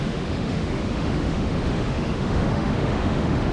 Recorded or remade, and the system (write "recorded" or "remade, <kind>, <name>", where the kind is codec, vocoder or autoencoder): remade, autoencoder, DAC-VAE